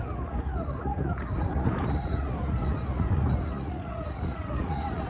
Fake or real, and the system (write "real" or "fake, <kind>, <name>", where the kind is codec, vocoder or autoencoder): fake, vocoder, Vocos